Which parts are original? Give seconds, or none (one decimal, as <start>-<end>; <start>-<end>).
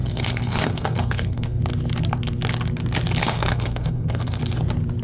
1.6-3.2; 4.4-5.0